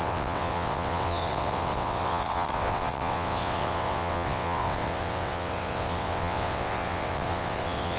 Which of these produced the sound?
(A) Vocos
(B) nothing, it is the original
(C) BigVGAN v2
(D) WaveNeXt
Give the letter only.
D